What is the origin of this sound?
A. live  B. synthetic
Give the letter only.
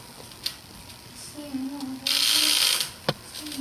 A